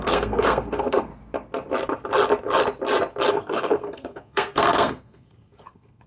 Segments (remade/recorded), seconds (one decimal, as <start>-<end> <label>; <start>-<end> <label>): 0.0-1.1 remade; 1.1-3.3 recorded; 3.3-6.1 remade